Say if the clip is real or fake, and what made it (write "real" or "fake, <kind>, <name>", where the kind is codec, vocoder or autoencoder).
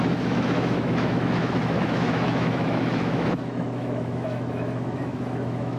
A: fake, autoencoder, DAC-VAE